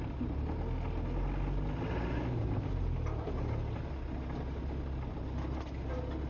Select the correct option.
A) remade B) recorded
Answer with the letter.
B